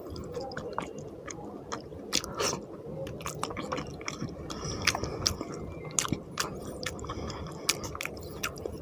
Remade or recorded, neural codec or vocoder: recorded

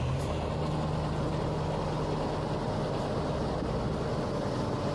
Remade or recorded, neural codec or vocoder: recorded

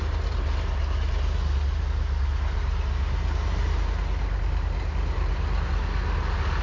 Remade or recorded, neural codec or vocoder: recorded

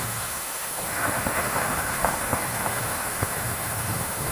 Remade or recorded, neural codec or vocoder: remade, autoencoder, DAC-VAE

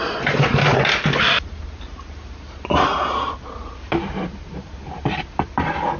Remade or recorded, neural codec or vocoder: recorded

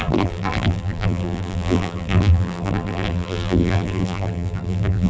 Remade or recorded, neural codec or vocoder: remade, vocoder, BigVGAN v2